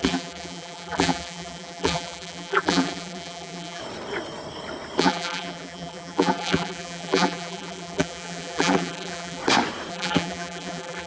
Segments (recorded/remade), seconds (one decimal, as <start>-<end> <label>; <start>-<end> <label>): 0.0-3.8 remade; 3.8-5.0 recorded; 5.0-9.4 remade; 9.4-9.9 recorded; 9.9-11.1 remade